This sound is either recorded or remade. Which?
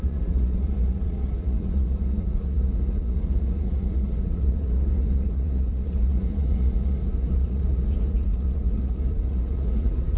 remade